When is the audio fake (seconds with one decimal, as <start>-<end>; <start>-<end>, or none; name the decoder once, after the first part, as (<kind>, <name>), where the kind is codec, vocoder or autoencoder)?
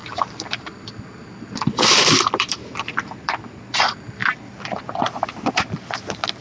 0.0-3.8 (vocoder, BigVGAN v2)